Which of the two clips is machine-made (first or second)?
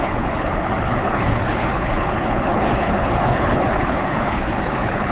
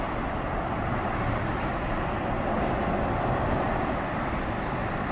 first